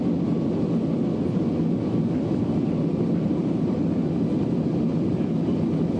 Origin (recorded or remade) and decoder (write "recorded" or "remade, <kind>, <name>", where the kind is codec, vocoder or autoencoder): recorded